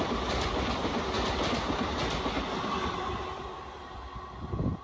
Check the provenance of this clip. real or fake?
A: real